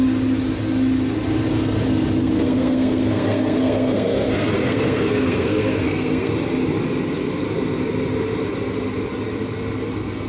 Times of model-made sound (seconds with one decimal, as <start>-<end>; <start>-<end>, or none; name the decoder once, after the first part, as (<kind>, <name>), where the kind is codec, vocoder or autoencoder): 2.2-6.3 (codec, SNAC)